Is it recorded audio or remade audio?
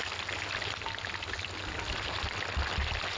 recorded